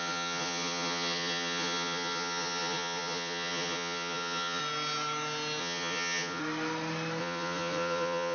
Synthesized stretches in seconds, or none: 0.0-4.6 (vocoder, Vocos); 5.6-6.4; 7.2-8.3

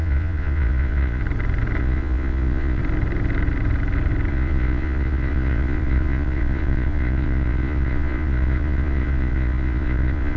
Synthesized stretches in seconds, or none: 0.0-1.2 (vocoder, Vocos); 1.8-2.8; 4.3-10.4

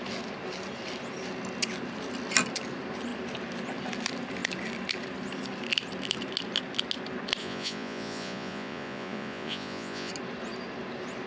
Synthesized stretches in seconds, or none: 7.4-10.1 (vocoder, Vocos)

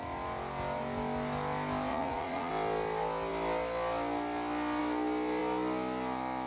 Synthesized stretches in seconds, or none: 1.9-2.5 (vocoder, Vocos)